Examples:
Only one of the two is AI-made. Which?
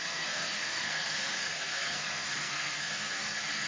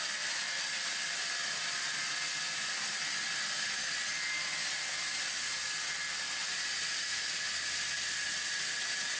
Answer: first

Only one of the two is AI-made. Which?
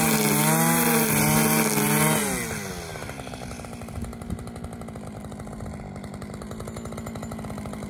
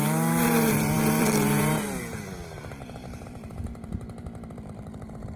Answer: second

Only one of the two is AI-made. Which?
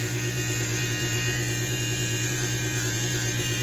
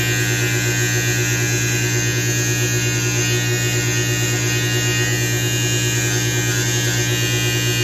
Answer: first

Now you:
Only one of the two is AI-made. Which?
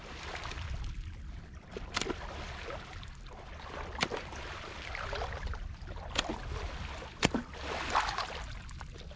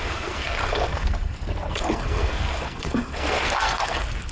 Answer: second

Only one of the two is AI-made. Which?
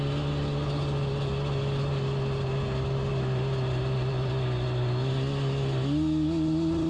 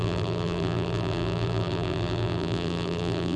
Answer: second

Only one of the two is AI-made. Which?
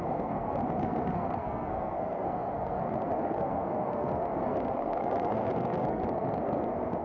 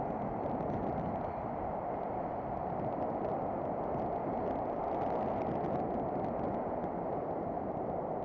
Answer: first